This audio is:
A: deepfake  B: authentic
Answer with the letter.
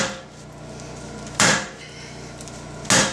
B